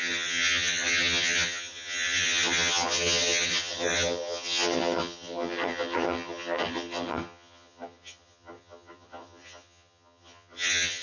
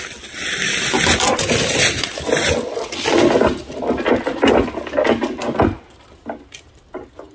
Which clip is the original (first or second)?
second